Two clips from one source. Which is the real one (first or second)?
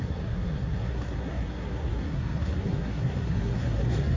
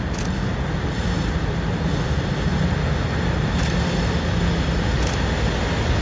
second